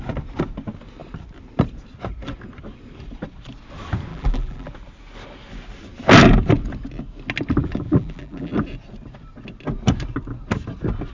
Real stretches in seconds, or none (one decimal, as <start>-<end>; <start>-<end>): 0.0-4.1; 4.7-7.6; 8.5-11.1